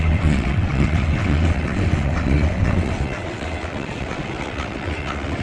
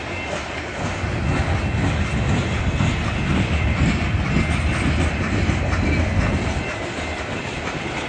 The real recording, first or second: second